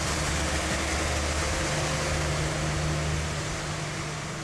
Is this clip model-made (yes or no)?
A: no